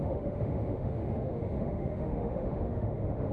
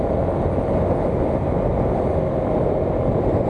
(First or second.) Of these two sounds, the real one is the second